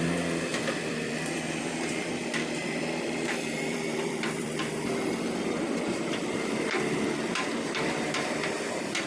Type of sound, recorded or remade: remade